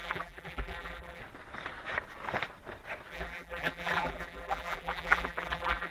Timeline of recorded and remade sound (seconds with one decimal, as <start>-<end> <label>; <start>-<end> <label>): 0.0-1.2 remade; 1.2-3.1 recorded; 3.1-5.9 remade